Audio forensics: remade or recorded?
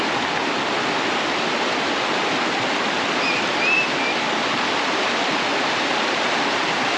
recorded